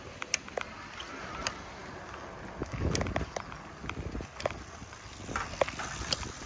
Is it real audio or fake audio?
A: real